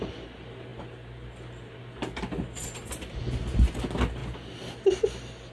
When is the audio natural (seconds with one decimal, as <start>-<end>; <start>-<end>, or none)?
0.0-5.5